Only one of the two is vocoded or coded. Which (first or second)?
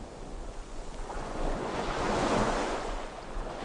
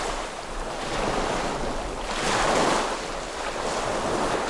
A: first